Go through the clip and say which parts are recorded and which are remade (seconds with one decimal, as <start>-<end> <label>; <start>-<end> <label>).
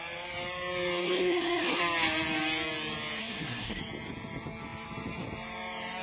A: 0.0-1.0 recorded; 1.0-1.8 remade; 1.8-3.2 recorded; 3.2-3.8 remade; 3.8-6.0 recorded